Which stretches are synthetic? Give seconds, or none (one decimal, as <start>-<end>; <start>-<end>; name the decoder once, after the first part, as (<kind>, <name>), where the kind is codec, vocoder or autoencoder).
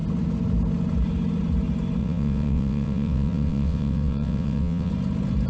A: 2.0-4.9 (vocoder, WaveNeXt)